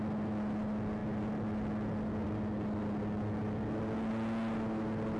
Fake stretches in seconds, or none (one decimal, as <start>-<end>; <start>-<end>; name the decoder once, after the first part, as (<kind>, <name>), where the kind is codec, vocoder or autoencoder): none